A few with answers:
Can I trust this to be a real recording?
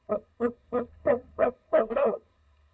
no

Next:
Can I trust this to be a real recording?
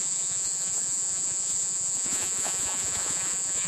no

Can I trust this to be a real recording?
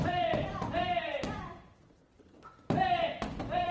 no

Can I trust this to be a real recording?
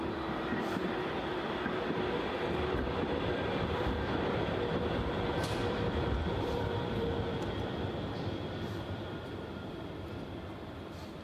no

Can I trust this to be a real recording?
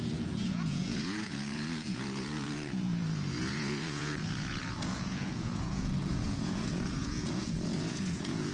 no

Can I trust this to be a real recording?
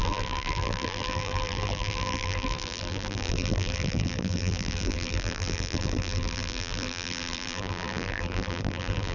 no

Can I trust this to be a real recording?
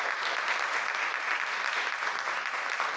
yes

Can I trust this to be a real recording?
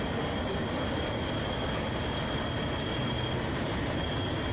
yes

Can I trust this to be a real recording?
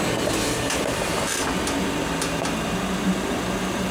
no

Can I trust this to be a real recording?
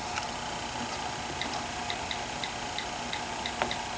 yes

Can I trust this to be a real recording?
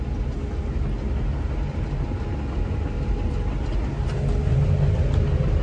yes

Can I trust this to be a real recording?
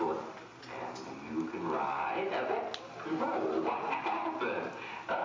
yes